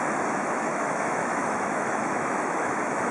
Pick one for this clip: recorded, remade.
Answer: remade